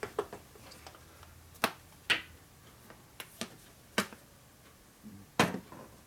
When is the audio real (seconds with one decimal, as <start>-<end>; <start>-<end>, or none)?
0.0-6.1